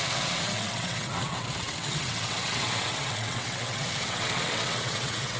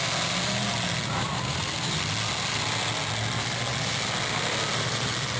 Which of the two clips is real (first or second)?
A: second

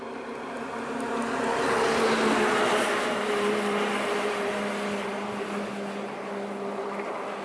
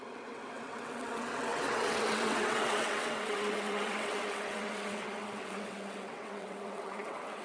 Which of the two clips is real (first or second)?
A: first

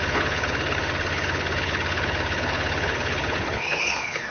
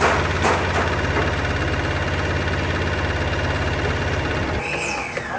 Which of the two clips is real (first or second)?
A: second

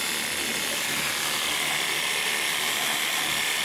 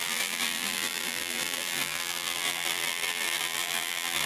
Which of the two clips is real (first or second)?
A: first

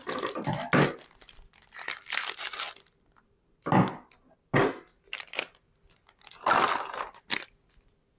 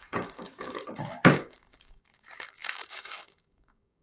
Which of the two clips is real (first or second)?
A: first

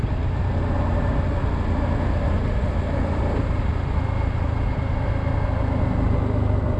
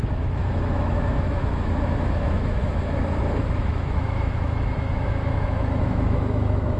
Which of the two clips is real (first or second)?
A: first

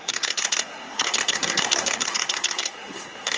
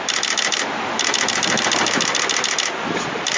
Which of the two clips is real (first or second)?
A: second